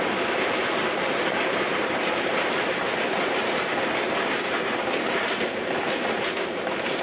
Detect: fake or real fake